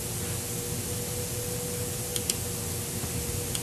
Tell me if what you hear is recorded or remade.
recorded